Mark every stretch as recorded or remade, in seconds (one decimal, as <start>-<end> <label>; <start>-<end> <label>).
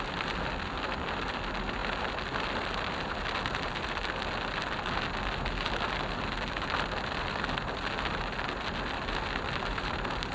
0.0-10.3 recorded